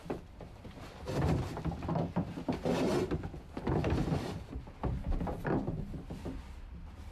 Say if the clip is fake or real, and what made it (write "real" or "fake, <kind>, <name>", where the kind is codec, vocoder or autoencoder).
real